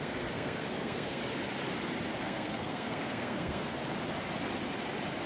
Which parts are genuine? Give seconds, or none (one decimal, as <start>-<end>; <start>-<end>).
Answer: 1.2-2.2; 3.8-5.3